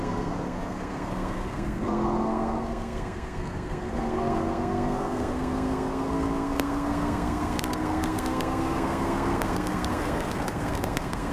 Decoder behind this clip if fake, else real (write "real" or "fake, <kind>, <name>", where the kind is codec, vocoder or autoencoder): fake, codec, SNAC